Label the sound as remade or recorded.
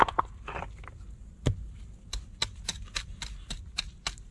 recorded